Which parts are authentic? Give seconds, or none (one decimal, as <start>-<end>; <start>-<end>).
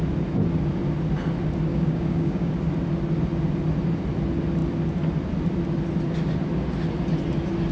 0.0-1.7; 2.5-7.7